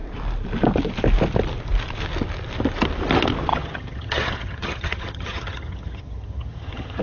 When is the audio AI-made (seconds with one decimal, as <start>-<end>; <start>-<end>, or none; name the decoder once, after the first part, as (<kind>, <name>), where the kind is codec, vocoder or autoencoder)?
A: 3.5-7.0 (vocoder, HiFi-GAN)